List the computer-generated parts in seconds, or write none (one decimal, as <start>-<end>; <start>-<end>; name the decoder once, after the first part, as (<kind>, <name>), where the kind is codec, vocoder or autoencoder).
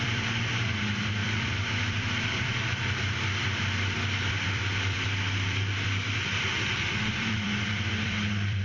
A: 0.0-8.6 (vocoder, BigVGAN v2)